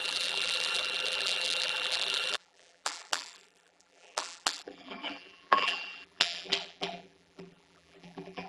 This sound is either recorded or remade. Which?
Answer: remade